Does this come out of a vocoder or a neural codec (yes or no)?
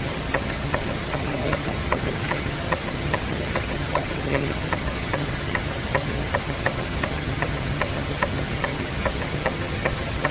yes